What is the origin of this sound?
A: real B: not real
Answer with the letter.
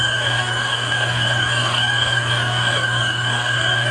B